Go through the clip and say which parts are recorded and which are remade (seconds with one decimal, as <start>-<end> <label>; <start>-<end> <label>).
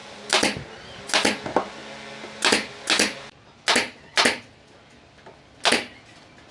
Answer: 0.0-1.0 remade; 1.0-6.5 recorded